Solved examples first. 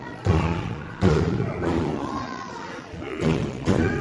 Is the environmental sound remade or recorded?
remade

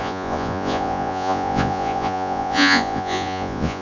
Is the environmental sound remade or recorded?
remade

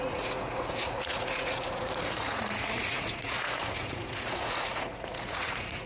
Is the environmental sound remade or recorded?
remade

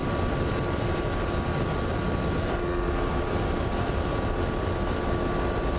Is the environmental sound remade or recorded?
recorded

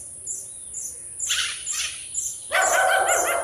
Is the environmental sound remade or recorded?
recorded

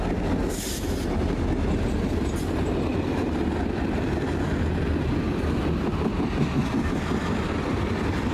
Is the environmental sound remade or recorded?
recorded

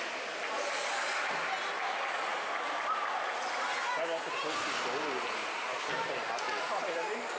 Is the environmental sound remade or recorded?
recorded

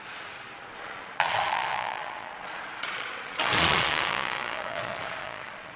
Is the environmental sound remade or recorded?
remade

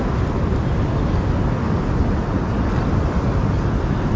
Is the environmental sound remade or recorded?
recorded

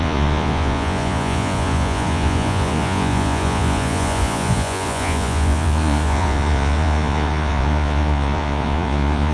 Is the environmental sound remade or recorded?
remade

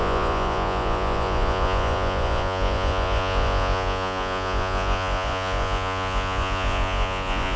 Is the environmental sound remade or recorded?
remade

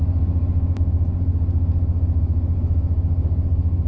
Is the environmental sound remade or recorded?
recorded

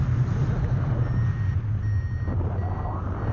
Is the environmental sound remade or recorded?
recorded